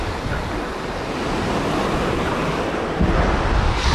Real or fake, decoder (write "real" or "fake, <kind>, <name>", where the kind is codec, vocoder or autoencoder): real